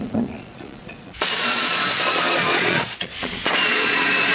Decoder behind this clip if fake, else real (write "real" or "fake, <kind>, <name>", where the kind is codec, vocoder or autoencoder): fake, vocoder, Vocos